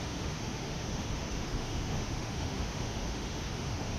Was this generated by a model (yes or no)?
yes